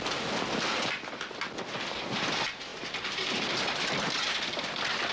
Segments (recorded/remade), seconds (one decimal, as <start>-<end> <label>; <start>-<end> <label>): 0.0-5.1 recorded